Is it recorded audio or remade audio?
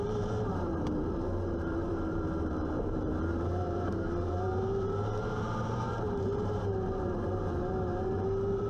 remade